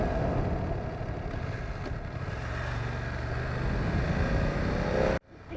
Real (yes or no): yes